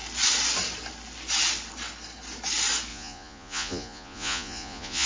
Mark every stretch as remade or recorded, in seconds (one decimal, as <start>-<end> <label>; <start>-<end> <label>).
0.0-2.9 recorded; 2.9-5.1 remade

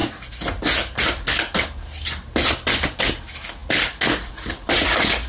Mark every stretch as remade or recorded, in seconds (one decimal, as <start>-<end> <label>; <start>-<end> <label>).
0.0-5.3 recorded